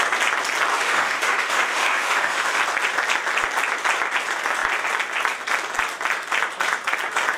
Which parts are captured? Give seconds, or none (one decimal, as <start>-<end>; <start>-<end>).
0.0-0.7; 2.6-7.4

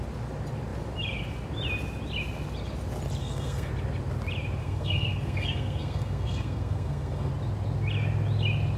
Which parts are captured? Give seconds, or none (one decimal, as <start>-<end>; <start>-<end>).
0.0-3.2; 3.7-4.6; 7.3-8.8

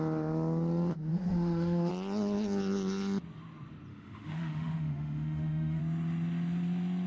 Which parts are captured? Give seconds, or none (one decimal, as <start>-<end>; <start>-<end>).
0.0-1.1; 1.9-3.9; 5.8-7.1

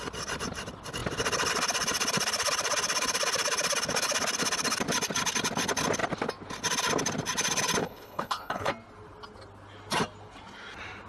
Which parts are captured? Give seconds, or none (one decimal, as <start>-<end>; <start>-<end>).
0.0-7.8; 8.7-11.1

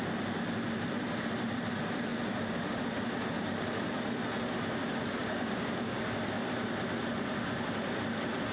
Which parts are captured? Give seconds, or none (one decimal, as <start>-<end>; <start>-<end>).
0.0-5.2; 6.0-8.5

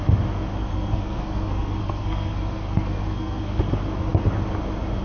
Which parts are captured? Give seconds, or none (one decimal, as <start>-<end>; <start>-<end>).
0.0-0.6; 3.6-5.0